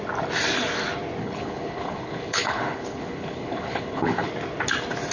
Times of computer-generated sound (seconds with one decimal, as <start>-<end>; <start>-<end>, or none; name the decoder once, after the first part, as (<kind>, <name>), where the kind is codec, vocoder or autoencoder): 1.2-4.3 (codec, HILCodec)